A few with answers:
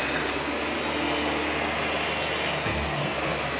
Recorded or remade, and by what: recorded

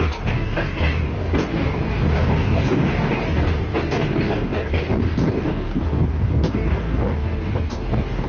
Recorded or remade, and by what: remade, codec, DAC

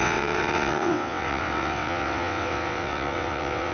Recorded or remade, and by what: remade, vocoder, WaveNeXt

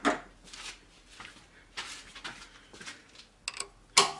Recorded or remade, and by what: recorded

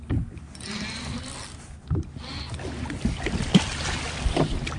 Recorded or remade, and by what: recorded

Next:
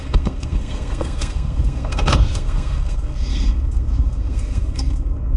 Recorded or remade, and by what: remade, codec, SNAC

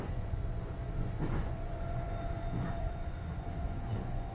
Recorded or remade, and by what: remade, vocoder, Vocos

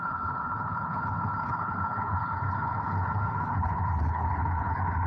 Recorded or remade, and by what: remade, codec, HILCodec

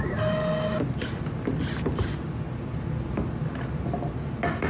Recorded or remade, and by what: recorded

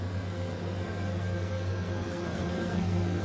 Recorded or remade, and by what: remade, codec, SNAC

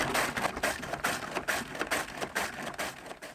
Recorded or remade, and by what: recorded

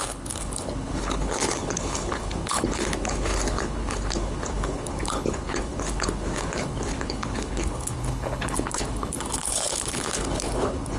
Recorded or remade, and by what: remade, codec, HILCodec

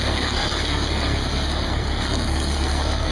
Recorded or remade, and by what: remade, codec, SNAC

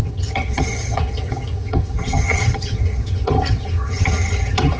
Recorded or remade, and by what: remade, vocoder, HiFi-GAN